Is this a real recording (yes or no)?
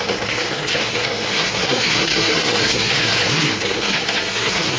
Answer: no